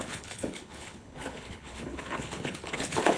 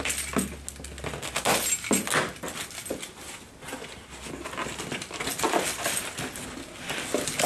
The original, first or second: second